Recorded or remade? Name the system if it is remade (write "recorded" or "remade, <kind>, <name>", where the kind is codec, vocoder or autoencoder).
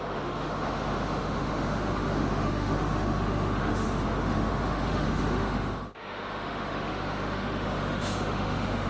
remade, autoencoder, DAC-VAE